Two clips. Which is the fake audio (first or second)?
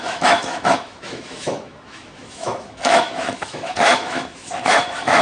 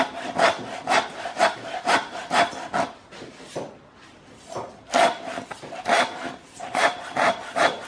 first